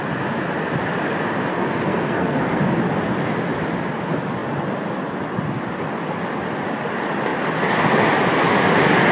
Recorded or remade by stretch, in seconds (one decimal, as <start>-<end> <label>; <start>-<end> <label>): 0.0-1.5 recorded; 1.5-2.6 remade; 2.6-9.1 recorded